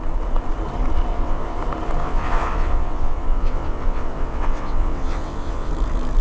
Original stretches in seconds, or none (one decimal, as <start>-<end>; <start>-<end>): 0.0-1.1; 1.6-2.0; 5.7-6.2